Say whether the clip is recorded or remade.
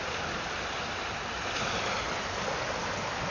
recorded